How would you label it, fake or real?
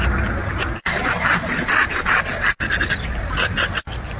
real